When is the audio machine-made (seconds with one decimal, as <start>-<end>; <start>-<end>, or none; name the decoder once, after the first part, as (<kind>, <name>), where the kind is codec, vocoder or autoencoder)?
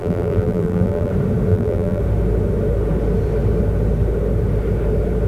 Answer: 0.0-1.1 (vocoder, BigVGAN v2); 1.5-2.0